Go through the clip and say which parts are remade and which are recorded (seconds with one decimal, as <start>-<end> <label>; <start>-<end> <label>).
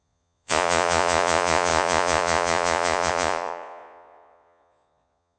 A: 0.0-5.4 remade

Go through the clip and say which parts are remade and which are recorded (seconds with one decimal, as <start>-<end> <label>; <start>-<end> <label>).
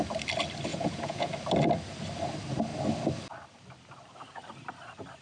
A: 0.0-0.7 recorded; 0.7-1.3 remade; 1.3-5.2 recorded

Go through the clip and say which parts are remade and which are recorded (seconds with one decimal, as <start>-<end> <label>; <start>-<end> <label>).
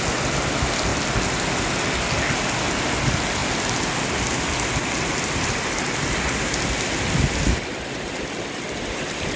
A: 0.0-9.4 recorded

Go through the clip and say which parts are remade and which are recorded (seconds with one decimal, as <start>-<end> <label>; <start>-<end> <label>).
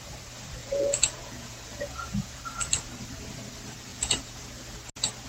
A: 0.0-0.6 recorded; 0.6-2.4 remade; 2.4-3.9 recorded; 3.9-4.4 remade; 4.4-5.3 recorded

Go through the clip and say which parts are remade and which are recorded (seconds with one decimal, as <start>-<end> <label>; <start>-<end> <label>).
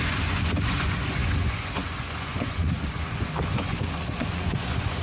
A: 0.0-5.0 remade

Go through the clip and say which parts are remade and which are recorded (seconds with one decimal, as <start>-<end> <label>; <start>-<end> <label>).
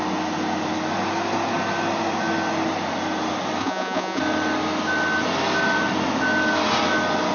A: 0.0-3.6 recorded; 3.6-4.2 remade; 4.2-7.3 recorded